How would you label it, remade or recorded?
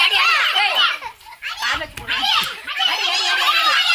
recorded